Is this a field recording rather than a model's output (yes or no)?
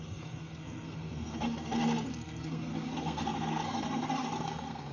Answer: no